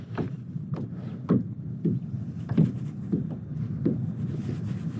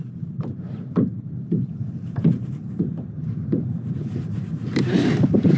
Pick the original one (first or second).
first